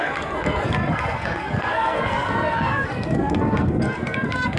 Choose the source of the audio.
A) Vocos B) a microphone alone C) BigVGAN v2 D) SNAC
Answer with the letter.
D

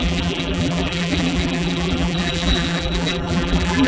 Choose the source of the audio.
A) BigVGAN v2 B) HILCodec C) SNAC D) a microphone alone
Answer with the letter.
A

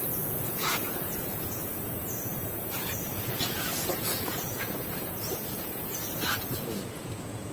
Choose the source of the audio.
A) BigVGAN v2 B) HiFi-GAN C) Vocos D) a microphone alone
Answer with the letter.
C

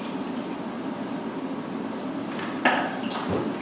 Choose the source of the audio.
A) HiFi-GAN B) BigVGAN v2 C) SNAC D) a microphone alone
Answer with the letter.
D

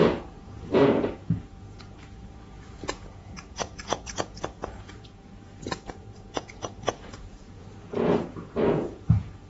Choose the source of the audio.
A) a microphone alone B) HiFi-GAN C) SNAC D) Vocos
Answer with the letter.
D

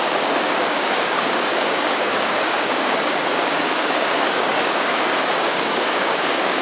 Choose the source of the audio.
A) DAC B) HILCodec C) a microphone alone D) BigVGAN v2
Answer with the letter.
A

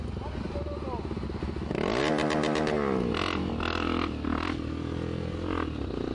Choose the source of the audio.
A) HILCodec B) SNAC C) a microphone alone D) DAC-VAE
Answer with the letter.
C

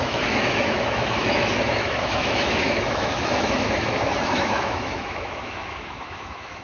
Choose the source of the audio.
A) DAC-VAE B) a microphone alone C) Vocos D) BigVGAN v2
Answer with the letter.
A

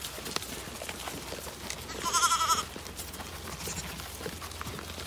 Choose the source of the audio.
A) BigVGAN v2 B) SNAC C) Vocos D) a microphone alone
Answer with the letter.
D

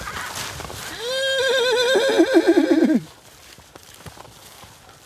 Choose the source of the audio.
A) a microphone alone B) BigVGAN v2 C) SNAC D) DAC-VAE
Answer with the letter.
A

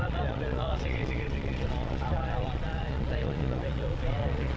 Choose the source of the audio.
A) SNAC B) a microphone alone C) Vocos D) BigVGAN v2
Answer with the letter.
C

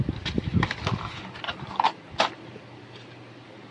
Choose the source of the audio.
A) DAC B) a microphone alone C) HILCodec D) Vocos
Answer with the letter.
B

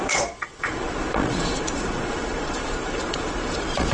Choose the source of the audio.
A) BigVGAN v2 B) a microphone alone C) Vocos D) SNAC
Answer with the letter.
C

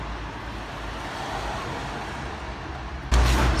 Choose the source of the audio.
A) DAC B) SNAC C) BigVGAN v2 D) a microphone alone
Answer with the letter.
D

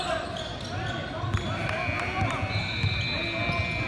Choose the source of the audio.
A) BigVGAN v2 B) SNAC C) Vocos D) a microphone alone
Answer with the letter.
D